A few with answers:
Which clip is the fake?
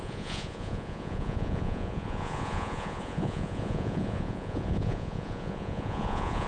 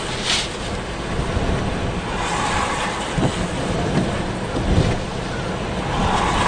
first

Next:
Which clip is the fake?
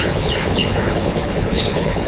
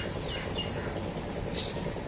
first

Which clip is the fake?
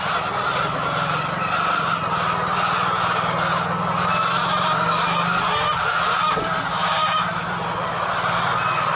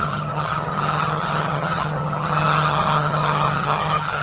second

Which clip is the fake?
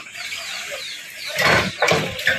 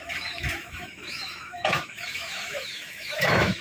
second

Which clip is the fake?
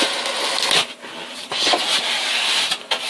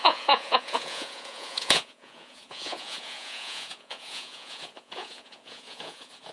second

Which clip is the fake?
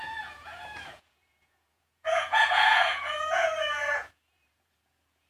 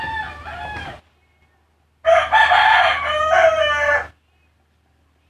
first